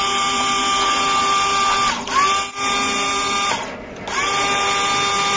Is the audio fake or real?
real